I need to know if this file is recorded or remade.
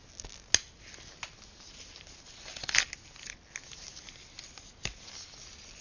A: recorded